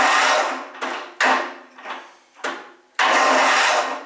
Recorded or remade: recorded